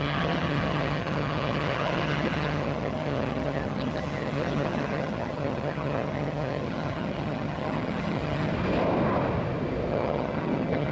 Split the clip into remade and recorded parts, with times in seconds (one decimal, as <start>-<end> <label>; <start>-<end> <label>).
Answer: 0.0-8.5 remade; 8.5-9.9 recorded; 9.9-10.9 remade